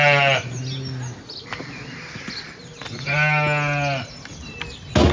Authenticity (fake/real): real